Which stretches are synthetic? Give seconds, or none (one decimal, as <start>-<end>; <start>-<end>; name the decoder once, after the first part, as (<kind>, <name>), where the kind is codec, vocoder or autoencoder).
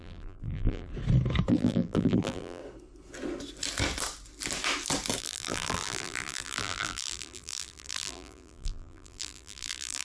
0.0-0.9 (vocoder, BigVGAN v2); 1.5-2.6; 5.2-10.0